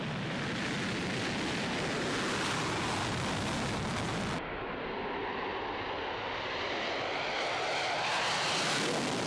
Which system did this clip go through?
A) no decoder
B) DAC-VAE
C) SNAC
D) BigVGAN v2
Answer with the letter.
A